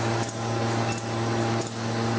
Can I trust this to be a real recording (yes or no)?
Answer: yes